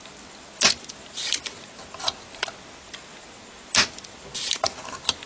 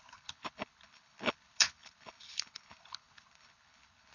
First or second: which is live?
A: first